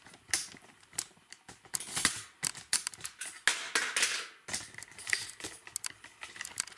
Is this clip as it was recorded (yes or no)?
yes